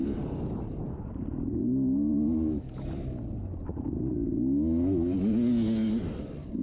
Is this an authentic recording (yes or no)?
yes